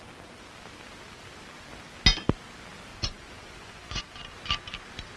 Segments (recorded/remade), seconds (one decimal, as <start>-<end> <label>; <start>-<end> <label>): 0.0-2.9 recorded; 2.9-4.0 remade; 4.0-5.2 recorded